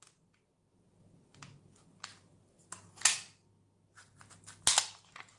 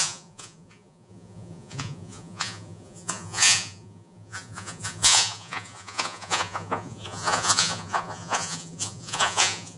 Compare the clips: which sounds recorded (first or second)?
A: first